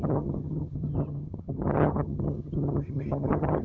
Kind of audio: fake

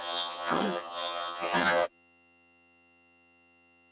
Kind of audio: fake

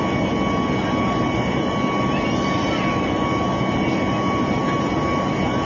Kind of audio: real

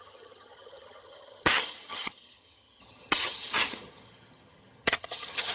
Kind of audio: fake